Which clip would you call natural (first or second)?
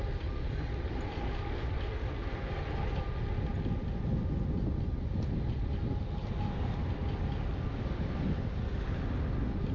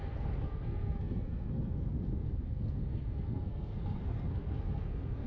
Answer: first